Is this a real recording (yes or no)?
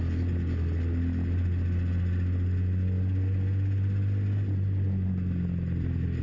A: yes